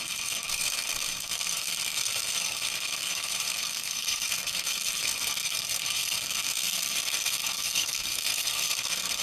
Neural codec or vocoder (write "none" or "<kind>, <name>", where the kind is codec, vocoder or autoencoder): codec, SNAC